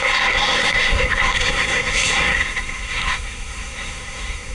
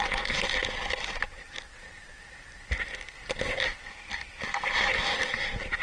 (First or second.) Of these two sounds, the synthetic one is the first